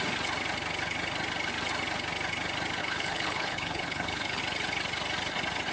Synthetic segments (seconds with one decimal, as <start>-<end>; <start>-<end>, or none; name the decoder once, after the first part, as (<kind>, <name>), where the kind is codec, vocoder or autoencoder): 2.8-4.4 (codec, HILCodec)